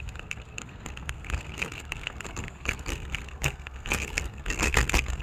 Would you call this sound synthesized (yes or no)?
yes